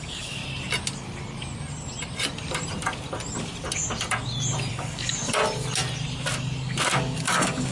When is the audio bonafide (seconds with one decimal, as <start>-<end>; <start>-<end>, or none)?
0.4-4.7; 5.4-7.0

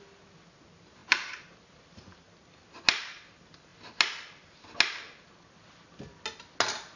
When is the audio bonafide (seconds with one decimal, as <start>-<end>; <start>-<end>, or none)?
0.0-7.0

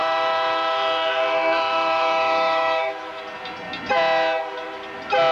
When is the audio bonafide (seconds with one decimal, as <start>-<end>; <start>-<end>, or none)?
3.2-5.3

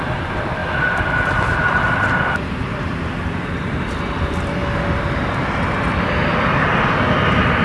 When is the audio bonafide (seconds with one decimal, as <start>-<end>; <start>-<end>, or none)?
0.6-1.2; 4.6-5.6

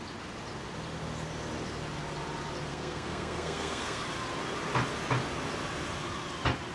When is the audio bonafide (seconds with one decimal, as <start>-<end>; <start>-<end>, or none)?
0.0-2.7; 4.0-6.7

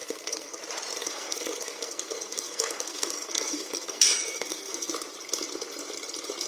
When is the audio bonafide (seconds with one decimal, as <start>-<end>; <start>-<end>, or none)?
0.6-1.0; 4.9-6.5

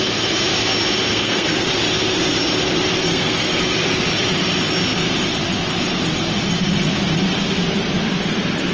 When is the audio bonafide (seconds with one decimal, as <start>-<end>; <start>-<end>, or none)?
0.0-1.1; 1.7-3.0; 3.6-8.7